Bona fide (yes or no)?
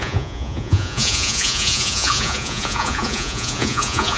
no